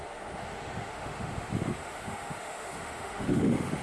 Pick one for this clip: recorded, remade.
remade